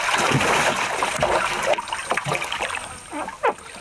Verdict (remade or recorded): recorded